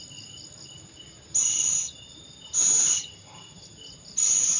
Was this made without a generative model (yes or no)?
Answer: yes